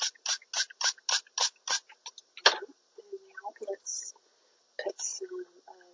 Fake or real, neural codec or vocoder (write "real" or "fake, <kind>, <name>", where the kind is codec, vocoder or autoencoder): real